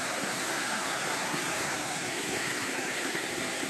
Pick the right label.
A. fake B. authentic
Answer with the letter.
A